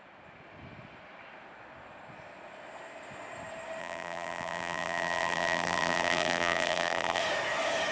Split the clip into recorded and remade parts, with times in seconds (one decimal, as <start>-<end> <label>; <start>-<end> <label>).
0.0-3.8 recorded; 3.8-7.2 remade; 7.2-7.9 recorded